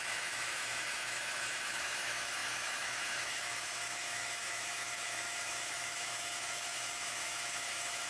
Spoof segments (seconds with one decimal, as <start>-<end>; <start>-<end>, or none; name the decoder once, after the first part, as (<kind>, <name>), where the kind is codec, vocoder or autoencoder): 0.0-8.1 (autoencoder, DAC-VAE)